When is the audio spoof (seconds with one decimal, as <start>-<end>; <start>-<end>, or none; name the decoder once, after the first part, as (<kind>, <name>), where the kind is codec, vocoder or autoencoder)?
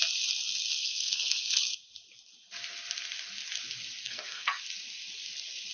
0.8-1.5 (codec, SNAC); 4.0-4.6